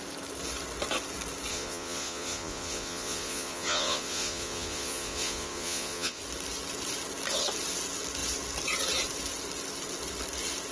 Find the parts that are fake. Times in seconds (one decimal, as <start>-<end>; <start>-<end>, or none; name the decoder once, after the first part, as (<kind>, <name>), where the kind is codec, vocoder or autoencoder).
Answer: 1.5-6.2 (vocoder, Vocos)